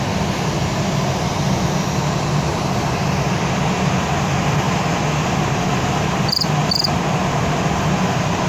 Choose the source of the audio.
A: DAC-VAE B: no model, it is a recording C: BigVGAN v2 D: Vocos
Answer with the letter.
B